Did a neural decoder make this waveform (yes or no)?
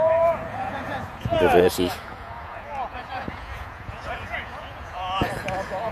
yes